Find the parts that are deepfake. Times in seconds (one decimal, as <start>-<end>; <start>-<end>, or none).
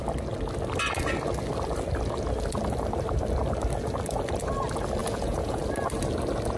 5.0-5.6